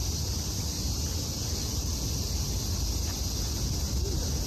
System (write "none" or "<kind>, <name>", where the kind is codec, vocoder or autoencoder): none